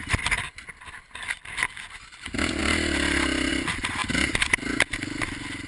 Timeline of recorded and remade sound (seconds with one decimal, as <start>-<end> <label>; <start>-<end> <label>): 0.0-5.7 recorded